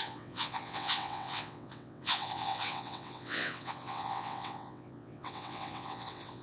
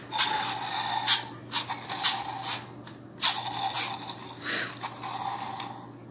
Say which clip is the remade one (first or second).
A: first